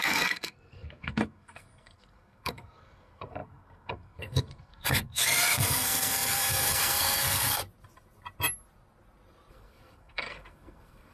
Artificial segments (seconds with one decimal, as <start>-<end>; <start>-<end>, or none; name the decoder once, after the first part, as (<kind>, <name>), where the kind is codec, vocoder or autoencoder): 0.0-7.6 (codec, SNAC); 9.5-11.1